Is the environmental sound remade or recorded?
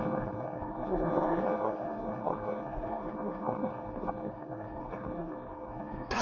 remade